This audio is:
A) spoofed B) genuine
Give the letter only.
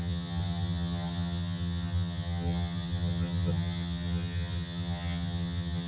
A